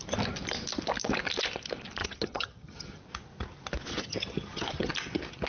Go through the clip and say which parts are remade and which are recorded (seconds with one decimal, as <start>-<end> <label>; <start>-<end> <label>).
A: 0.0-2.0 recorded; 2.0-3.0 remade; 3.0-3.9 recorded; 3.9-4.9 remade; 4.9-5.5 recorded